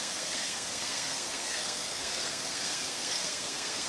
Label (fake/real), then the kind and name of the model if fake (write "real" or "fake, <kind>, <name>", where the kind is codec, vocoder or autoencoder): fake, codec, SNAC